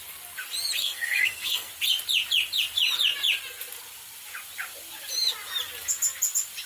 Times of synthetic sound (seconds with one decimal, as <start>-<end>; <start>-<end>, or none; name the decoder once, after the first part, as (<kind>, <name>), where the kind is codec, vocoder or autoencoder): 0.8-1.7 (codec, SNAC)